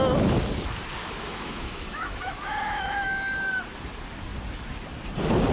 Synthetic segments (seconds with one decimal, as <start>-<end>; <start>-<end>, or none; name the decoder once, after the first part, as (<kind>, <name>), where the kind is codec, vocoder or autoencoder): 1.0-3.6 (autoencoder, DAC-VAE)